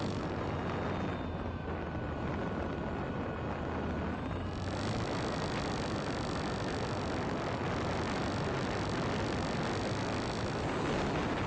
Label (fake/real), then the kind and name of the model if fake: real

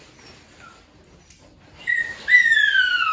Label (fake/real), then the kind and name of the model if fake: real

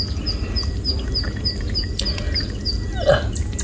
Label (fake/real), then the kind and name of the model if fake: real